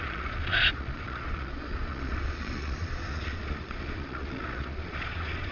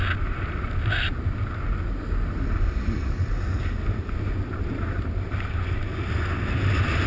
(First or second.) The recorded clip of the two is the second